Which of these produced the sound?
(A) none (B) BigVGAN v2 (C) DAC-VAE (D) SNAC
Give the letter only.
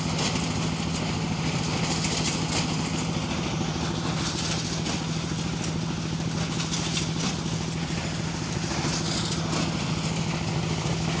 A